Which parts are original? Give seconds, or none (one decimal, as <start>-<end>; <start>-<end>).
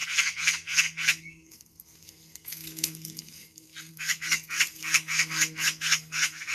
none